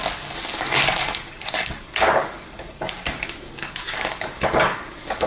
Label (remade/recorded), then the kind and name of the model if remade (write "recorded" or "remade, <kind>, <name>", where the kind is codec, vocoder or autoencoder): remade, codec, DAC